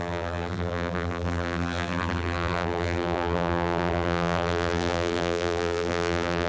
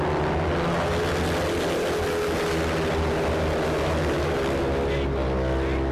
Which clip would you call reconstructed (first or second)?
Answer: first